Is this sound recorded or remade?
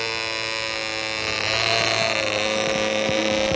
recorded